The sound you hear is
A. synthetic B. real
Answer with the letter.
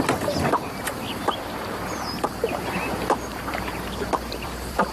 A